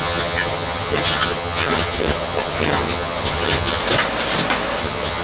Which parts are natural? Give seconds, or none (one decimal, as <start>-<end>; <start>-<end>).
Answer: 3.8-4.8